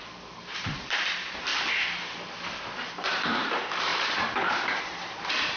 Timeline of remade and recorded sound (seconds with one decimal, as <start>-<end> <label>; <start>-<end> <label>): 0.0-1.5 remade; 1.5-3.0 recorded; 3.0-5.6 remade